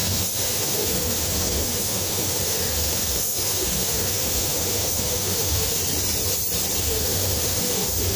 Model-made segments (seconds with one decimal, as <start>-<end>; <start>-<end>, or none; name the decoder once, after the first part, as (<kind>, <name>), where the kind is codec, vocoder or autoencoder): 0.0-5.8 (autoencoder, DAC-VAE); 6.8-8.2